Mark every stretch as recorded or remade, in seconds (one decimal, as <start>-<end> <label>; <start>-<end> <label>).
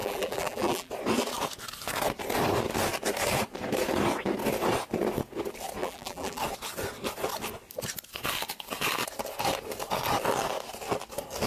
0.0-0.9 remade; 0.9-5.8 recorded; 5.8-6.4 remade; 6.4-11.5 recorded